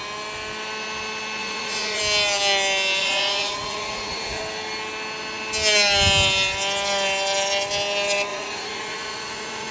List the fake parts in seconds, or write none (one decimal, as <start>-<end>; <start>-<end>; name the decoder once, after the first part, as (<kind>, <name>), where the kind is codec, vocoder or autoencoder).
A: 1.4-2.0 (vocoder, Vocos); 3.0-4.4; 8.3-9.7